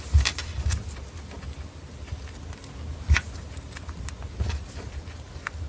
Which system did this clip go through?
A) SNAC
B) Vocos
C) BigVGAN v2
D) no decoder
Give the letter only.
D